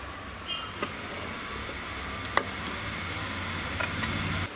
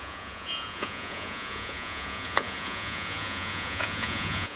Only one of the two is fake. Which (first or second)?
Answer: second